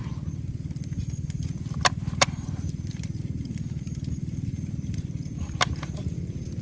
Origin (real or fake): real